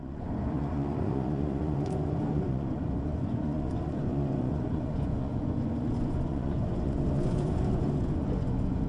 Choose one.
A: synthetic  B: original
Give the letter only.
A